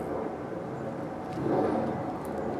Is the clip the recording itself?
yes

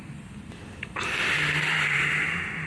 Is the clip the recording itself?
yes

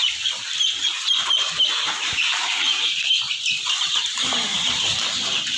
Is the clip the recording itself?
no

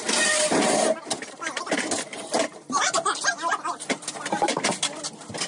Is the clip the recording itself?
yes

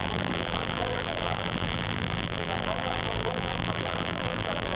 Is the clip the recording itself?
no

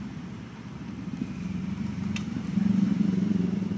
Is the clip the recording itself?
no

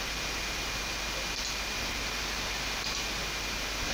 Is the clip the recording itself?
no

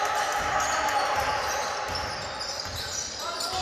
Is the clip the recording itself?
yes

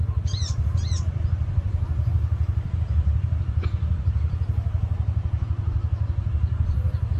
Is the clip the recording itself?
no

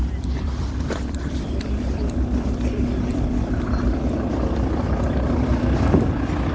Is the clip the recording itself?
no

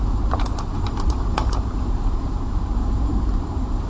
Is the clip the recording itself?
no